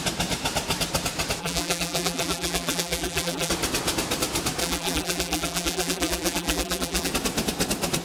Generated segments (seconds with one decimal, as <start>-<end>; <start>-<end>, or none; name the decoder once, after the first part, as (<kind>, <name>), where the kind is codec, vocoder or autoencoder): 1.4-3.5 (vocoder, BigVGAN v2); 4.6-7.1